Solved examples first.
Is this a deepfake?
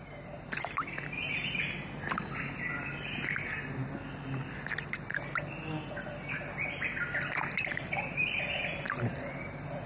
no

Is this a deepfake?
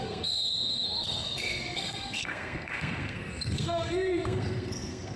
yes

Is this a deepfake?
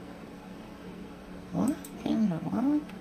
yes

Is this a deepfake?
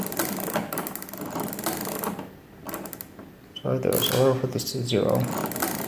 no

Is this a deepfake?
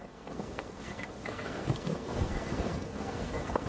yes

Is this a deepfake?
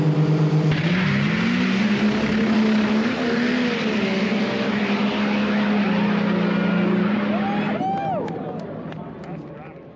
no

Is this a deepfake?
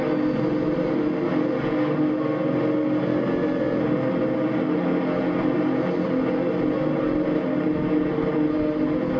no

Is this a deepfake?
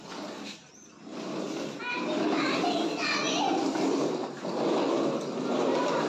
no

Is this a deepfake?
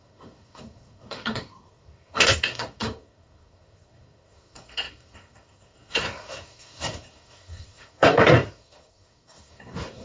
yes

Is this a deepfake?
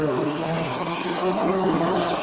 yes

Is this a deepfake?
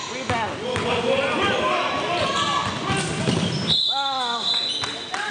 no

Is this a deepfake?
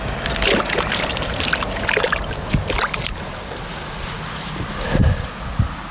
no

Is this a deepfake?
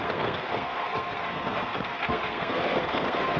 yes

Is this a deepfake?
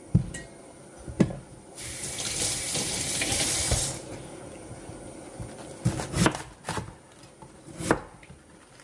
no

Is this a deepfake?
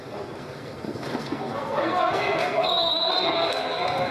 yes